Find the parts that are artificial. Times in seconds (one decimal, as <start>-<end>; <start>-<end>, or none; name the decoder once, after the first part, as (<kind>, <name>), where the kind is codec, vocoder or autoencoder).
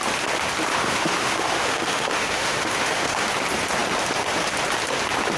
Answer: 0.7-3.3 (autoencoder, DAC-VAE)